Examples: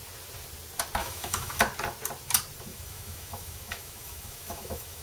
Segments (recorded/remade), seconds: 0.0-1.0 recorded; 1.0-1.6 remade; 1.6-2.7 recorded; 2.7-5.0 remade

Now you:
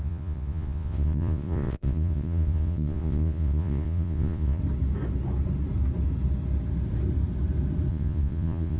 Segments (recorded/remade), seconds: 0.0-4.6 remade; 4.6-7.9 recorded; 7.9-8.8 remade